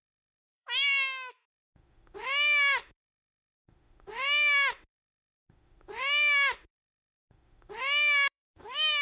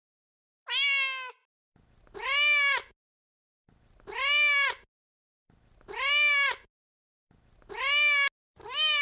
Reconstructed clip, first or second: first